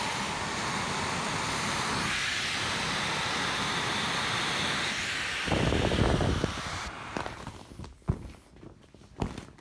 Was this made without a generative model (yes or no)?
yes